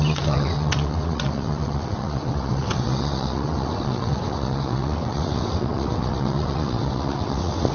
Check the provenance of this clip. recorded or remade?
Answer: remade